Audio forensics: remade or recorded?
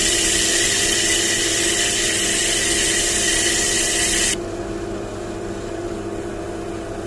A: recorded